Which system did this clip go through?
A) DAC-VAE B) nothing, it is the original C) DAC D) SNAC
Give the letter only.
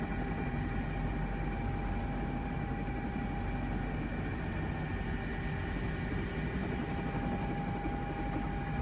B